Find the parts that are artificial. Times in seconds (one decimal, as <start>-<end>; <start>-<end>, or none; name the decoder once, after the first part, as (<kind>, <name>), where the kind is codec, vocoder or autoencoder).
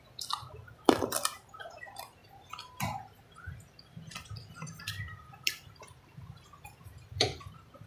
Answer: 0.0-7.9 (vocoder, BigVGAN v2)